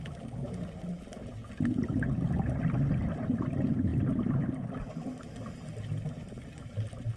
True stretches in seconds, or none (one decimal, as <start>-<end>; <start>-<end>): 0.0-7.2